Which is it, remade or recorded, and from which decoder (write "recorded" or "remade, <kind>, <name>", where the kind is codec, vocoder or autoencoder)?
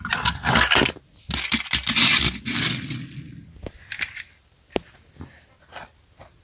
recorded